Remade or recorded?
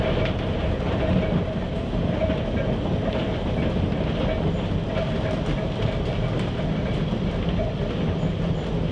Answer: recorded